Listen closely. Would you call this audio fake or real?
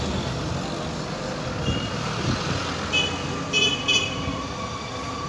real